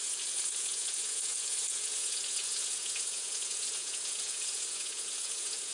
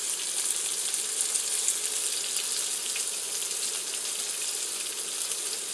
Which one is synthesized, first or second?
first